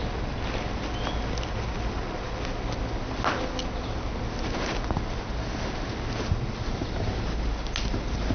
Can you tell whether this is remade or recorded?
recorded